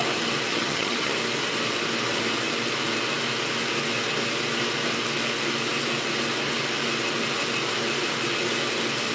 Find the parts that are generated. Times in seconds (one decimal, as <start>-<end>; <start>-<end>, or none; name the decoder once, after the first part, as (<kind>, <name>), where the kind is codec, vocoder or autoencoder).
0.5-1.1 (vocoder, HiFi-GAN)

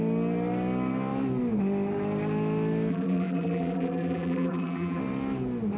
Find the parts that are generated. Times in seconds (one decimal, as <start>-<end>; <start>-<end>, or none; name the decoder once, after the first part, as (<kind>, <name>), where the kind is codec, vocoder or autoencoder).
2.9-5.0 (vocoder, BigVGAN v2)

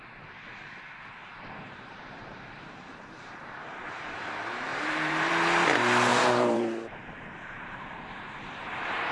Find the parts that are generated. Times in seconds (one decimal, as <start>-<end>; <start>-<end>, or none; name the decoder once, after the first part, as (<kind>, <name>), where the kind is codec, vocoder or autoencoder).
1.3-4.2 (vocoder, BigVGAN v2); 4.7-5.3; 6.1-9.1

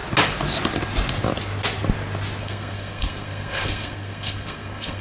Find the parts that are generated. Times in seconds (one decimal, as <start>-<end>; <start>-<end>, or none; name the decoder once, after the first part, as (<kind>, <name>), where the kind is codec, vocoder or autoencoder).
2.4-5.0 (codec, SNAC)

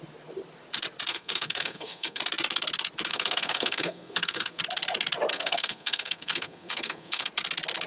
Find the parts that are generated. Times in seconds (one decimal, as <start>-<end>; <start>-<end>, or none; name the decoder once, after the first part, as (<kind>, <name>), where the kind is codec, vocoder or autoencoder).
1.1-2.2 (codec, SNAC); 3.1-4.6; 5.3-7.3

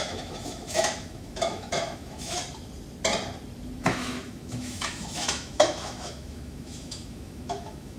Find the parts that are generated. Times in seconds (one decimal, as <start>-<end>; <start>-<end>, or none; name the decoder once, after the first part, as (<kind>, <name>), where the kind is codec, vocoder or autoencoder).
0.0-2.4 (autoencoder, DAC-VAE); 3.8-8.0

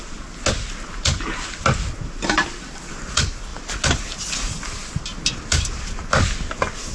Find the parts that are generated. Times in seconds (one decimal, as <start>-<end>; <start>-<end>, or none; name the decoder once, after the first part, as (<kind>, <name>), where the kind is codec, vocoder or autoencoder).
none

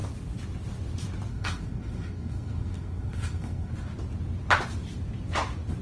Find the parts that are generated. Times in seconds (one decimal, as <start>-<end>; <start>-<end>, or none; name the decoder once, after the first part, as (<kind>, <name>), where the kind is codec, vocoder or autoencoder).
1.3-3.7 (codec, SNAC)